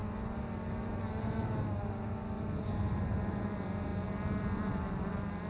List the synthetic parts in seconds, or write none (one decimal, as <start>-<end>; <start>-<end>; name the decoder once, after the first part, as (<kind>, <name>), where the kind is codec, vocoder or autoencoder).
none